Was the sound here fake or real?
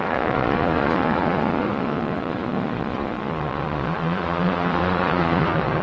fake